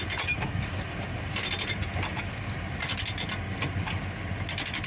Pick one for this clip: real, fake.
real